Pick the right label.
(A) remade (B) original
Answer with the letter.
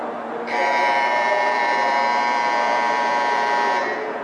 A